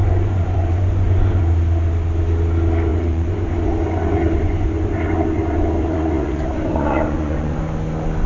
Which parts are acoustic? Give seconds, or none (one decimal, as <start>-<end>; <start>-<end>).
1.4-2.9; 7.6-8.3